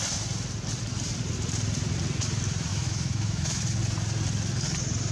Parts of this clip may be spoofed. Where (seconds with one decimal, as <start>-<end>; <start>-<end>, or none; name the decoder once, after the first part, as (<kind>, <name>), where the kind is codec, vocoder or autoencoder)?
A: 2.7-3.6 (autoencoder, DAC-VAE)